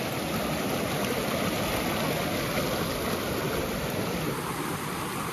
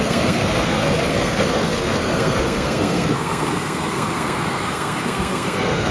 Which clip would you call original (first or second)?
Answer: first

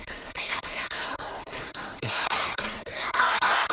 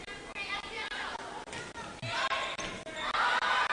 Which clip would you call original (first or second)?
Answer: second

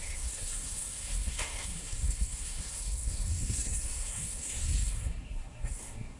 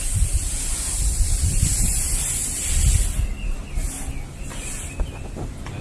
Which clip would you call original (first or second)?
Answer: second